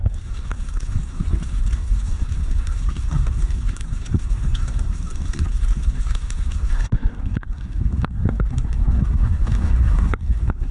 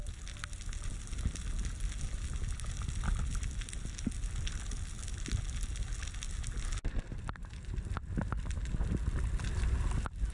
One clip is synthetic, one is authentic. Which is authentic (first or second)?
second